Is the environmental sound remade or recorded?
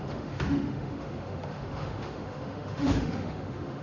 remade